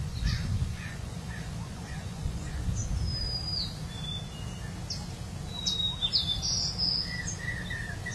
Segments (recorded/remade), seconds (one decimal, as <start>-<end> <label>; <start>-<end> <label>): 0.0-2.8 remade; 2.8-8.1 recorded